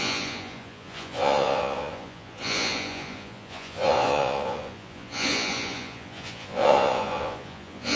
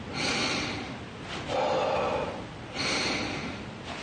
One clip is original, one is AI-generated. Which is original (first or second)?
second